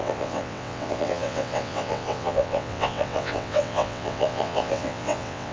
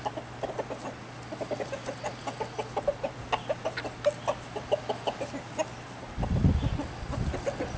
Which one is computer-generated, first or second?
first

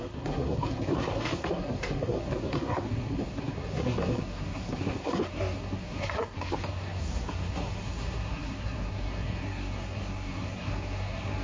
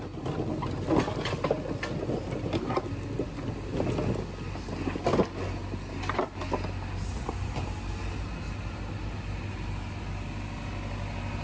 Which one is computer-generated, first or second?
first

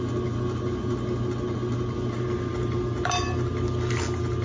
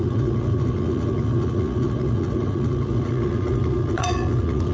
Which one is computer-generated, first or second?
second